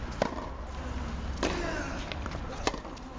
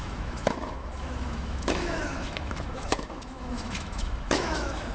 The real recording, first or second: first